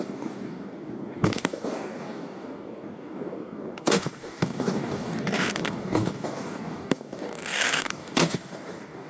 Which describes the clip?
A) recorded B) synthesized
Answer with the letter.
B